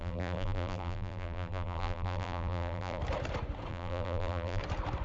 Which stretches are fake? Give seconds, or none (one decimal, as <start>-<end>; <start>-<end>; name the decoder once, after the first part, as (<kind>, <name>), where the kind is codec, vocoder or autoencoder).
0.0-3.0 (vocoder, BigVGAN v2); 3.7-4.6